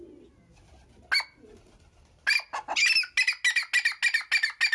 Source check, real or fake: real